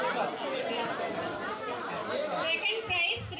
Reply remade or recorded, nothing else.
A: recorded